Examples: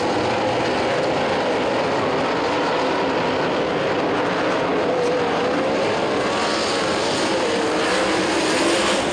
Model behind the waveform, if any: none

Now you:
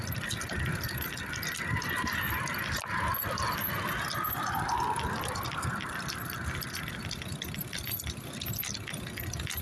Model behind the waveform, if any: none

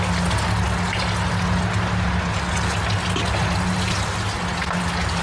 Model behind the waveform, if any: none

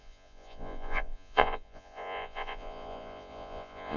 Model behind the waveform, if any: vocoder, Vocos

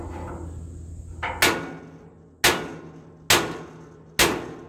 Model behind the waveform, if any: none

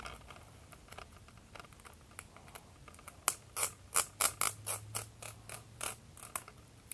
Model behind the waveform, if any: none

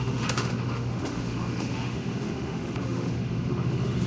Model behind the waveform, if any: autoencoder, DAC-VAE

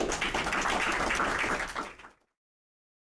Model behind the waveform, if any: none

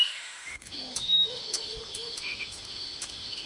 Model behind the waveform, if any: autoencoder, DAC-VAE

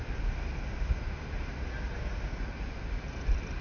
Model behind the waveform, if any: none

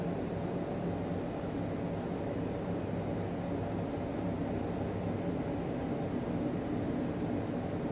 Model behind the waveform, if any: none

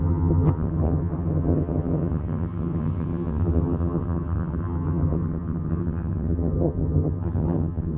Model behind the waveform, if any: vocoder, HiFi-GAN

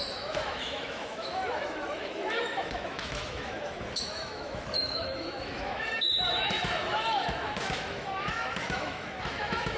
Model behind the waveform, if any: autoencoder, DAC-VAE